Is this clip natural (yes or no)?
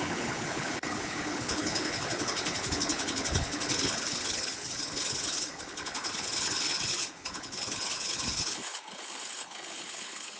no